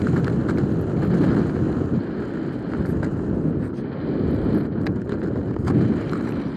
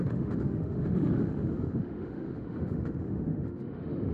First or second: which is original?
first